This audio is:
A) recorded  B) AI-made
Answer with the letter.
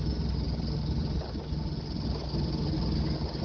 A